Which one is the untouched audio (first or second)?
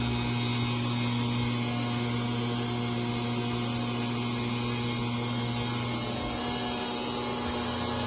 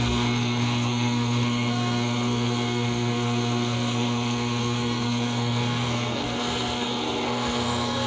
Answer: first